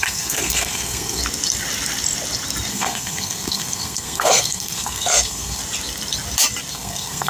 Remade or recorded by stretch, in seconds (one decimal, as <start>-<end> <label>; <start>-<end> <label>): 0.0-1.2 remade; 1.2-2.7 recorded; 2.7-5.6 remade; 5.6-6.7 recorded; 6.7-7.3 remade